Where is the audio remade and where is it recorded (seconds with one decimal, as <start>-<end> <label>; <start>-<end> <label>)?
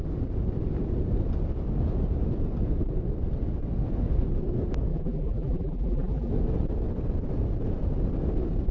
0.0-4.9 recorded; 4.9-6.3 remade; 6.3-8.7 recorded